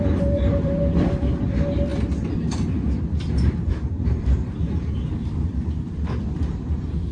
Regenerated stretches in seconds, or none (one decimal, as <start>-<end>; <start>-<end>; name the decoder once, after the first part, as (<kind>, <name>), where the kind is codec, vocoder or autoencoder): 0.0-7.1 (vocoder, BigVGAN v2)